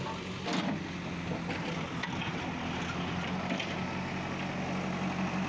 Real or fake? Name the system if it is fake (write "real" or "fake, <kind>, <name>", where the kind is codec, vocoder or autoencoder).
real